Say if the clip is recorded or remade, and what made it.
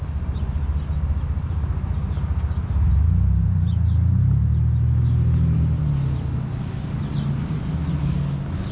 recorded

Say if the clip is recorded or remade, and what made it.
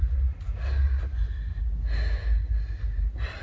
recorded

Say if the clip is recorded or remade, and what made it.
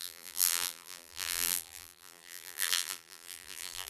remade, vocoder, BigVGAN v2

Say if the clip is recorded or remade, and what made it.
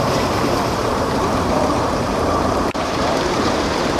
remade, vocoder, BigVGAN v2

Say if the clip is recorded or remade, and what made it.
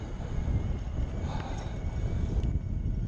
recorded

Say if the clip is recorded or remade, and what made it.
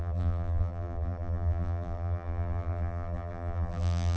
remade, vocoder, BigVGAN v2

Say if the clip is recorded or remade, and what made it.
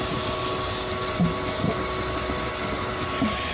recorded